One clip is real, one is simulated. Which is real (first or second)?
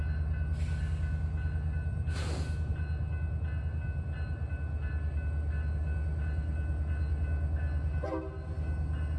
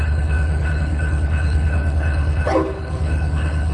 first